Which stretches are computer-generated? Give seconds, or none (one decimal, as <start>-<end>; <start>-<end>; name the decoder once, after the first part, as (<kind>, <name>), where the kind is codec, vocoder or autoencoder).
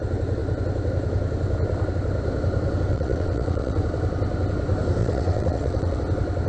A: 2.9-3.8 (vocoder, WaveNeXt); 5.0-6.0